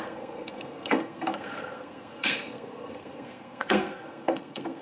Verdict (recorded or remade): remade